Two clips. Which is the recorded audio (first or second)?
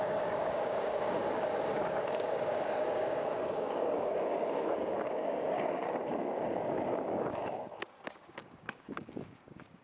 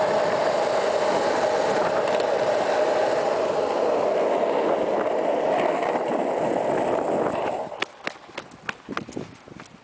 second